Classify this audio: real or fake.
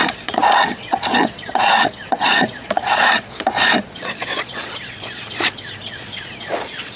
fake